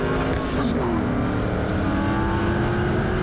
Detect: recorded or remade recorded